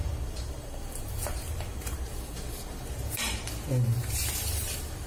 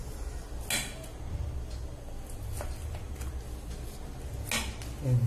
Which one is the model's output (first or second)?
first